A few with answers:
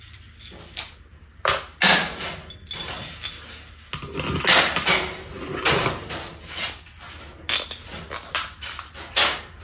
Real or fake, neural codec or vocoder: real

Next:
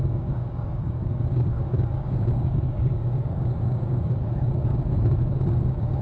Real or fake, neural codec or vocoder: fake, codec, DAC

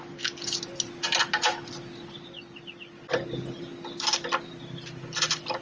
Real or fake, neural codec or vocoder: real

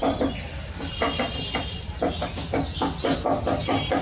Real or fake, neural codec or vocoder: real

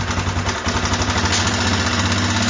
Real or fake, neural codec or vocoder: real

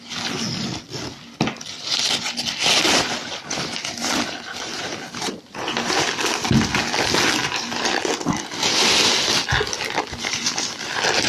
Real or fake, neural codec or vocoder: real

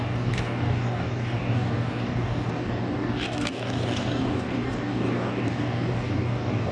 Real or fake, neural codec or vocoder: fake, codec, DAC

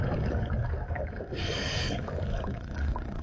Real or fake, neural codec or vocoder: fake, codec, DAC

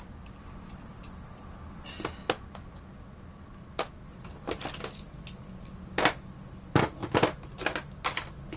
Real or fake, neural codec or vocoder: real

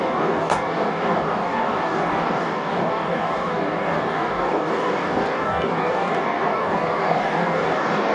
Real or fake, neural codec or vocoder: fake, codec, DAC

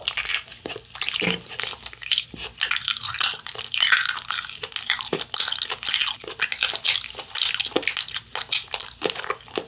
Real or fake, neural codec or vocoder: real